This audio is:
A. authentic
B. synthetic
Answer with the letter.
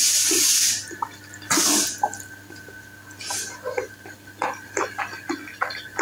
A